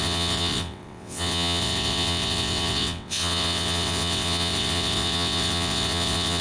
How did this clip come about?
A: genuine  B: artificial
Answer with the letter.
B